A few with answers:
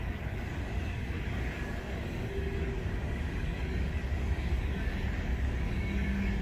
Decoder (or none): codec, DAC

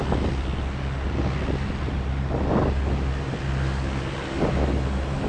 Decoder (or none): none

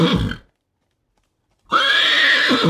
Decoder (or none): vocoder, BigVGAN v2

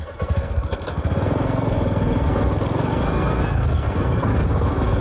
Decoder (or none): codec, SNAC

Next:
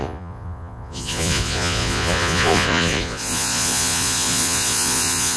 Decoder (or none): vocoder, Vocos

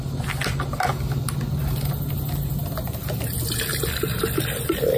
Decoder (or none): none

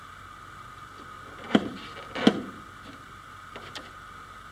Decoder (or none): none